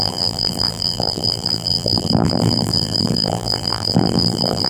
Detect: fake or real fake